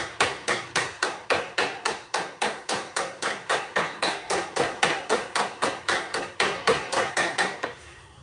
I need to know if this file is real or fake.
fake